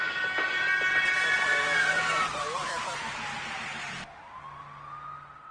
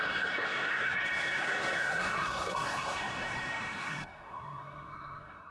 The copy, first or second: second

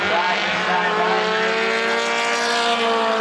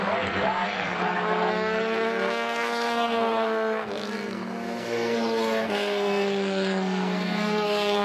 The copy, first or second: second